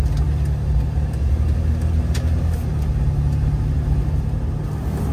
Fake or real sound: real